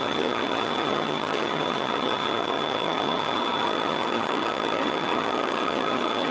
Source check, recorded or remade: remade